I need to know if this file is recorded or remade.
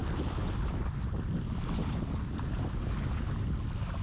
recorded